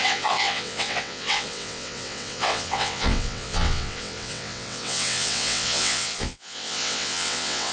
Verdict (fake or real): fake